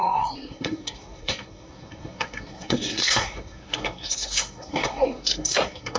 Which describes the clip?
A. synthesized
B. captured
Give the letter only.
A